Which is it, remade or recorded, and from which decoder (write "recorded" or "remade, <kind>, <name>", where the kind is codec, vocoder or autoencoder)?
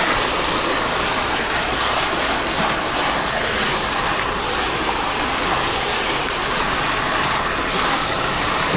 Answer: recorded